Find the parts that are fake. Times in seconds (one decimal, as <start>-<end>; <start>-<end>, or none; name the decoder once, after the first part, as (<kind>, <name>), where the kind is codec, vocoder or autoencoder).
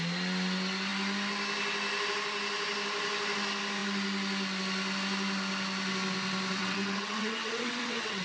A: 6.5-8.2 (vocoder, WaveNeXt)